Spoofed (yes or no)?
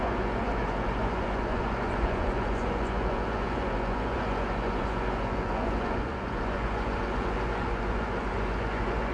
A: yes